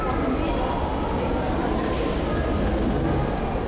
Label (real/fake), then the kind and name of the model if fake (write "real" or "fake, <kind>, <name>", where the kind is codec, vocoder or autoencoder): real